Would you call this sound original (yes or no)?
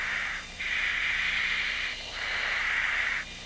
yes